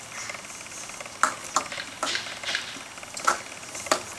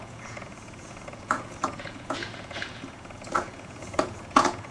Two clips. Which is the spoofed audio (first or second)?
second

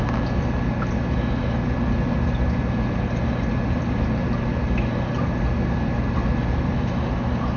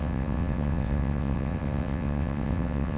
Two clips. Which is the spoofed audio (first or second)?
second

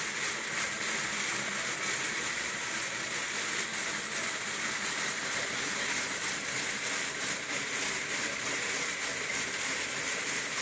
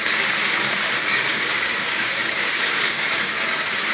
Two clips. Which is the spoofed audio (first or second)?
second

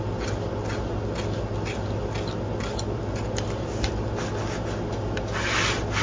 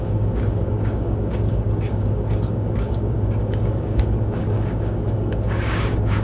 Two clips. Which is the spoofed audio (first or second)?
second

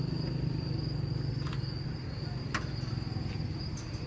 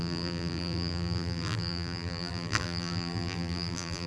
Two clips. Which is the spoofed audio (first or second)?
second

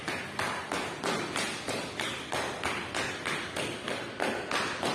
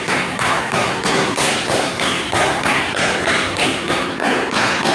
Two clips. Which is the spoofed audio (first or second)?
second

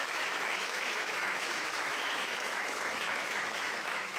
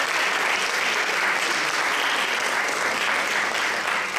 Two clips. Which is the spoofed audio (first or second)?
first